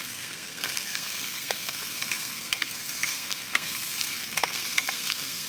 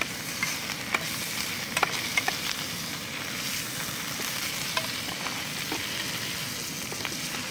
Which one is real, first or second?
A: second